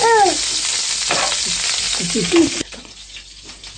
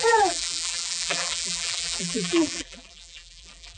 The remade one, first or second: second